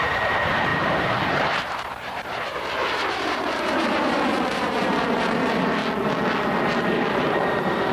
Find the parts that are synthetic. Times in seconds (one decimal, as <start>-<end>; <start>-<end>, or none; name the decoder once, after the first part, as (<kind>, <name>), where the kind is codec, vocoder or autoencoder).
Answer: 0.0-5.8 (vocoder, BigVGAN v2); 6.6-7.9